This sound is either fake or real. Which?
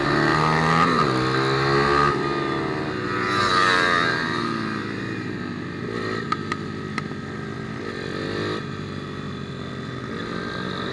real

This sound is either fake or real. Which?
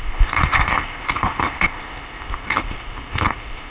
fake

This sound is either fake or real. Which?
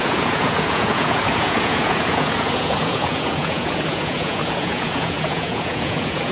fake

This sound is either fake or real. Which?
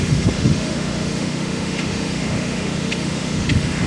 fake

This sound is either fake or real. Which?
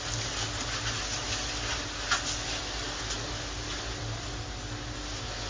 real